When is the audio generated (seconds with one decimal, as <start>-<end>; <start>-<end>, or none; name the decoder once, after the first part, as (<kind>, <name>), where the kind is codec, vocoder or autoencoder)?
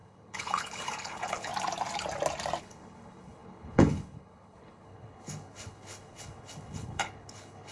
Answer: 0.0-1.5 (codec, HILCodec); 2.6-7.7